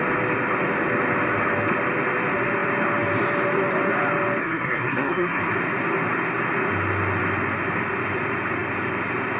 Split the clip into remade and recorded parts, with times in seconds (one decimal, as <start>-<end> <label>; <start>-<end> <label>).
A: 0.0-4.4 recorded; 4.4-5.4 remade; 5.4-9.4 recorded